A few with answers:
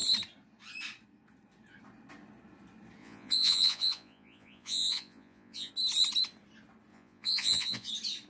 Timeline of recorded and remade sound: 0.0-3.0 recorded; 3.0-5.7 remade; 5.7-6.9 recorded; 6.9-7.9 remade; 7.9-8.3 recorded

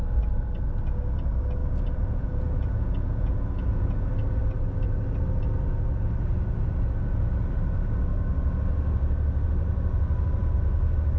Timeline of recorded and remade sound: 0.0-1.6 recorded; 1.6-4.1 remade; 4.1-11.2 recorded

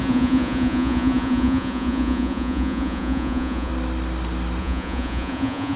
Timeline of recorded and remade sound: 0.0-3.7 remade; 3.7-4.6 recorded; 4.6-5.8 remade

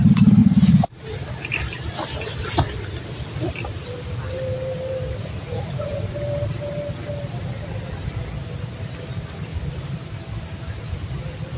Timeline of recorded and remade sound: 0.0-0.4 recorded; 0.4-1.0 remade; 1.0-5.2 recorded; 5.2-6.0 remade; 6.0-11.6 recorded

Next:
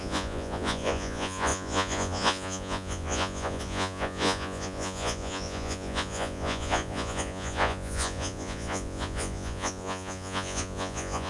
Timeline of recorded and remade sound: 0.0-11.3 remade